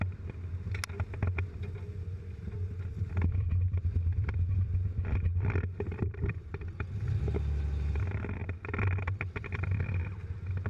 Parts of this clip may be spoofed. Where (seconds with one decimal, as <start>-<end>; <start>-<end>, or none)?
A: 2.9-7.2; 8.4-9.9